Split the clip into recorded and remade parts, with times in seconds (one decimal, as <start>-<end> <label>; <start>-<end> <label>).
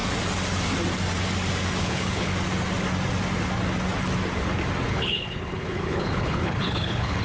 0.0-1.8 recorded; 1.8-2.3 remade; 2.3-4.9 recorded; 4.9-7.2 remade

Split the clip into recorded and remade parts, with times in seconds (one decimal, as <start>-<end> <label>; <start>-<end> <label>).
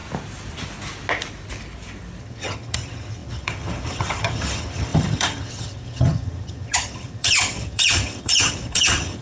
0.0-2.2 recorded; 2.2-9.2 remade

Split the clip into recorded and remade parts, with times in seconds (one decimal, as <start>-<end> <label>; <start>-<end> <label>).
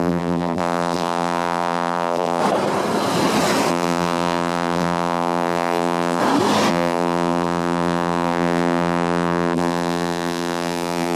0.0-2.4 remade; 2.4-3.7 recorded; 3.7-6.2 remade; 6.2-6.7 recorded; 6.7-11.2 remade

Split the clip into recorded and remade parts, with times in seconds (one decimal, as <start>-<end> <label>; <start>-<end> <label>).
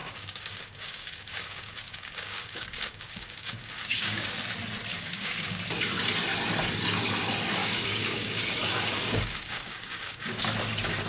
0.0-4.3 remade; 4.3-4.9 recorded; 4.9-5.6 remade; 5.6-7.6 recorded; 7.6-10.4 remade; 10.4-11.1 recorded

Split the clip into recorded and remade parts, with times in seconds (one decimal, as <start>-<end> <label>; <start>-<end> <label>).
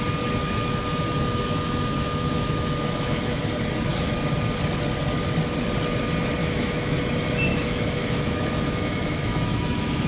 0.0-0.4 recorded; 0.4-3.4 remade; 3.4-6.4 recorded; 6.4-7.0 remade; 7.0-7.5 recorded; 7.5-10.1 remade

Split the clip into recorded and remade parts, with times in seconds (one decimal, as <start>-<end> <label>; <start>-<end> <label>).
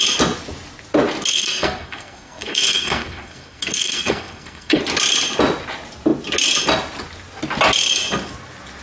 0.0-1.3 recorded; 1.3-4.8 remade; 4.8-8.8 recorded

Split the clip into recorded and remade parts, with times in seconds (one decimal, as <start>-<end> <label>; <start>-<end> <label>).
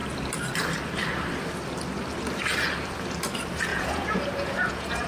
0.0-3.7 recorded; 3.7-5.1 remade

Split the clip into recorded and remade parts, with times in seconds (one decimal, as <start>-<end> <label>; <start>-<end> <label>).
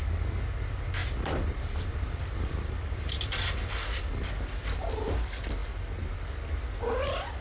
0.0-1.0 recorded; 1.0-4.9 remade; 4.9-7.4 recorded